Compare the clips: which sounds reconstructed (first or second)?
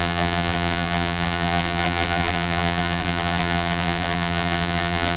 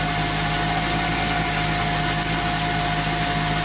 first